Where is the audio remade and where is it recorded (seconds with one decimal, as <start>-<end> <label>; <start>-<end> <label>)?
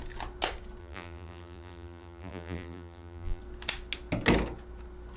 0.0-0.8 recorded; 0.8-3.4 remade; 3.4-5.2 recorded